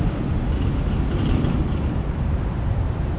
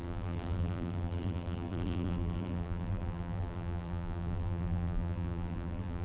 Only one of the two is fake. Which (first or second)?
second